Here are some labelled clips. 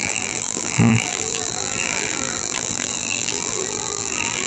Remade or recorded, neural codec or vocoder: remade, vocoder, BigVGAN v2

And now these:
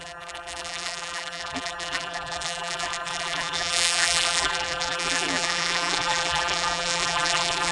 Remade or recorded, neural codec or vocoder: remade, vocoder, BigVGAN v2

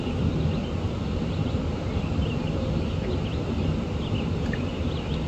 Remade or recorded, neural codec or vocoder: recorded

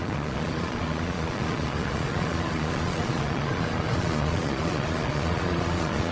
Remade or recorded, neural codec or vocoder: remade, vocoder, Vocos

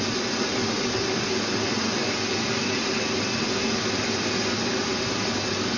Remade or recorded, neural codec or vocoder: recorded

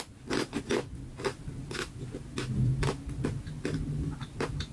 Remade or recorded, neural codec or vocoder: recorded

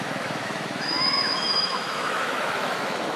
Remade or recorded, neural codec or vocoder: remade, autoencoder, DAC-VAE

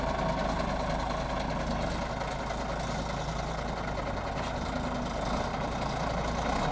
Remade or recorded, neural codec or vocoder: recorded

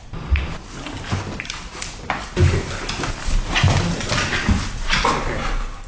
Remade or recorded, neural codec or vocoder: recorded